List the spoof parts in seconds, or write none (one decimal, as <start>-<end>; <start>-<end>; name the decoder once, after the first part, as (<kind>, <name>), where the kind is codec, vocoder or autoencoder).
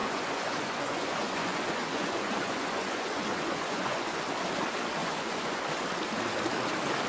0.0-4.3 (vocoder, Vocos); 5.0-5.6